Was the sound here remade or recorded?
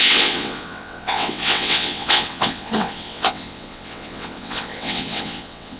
remade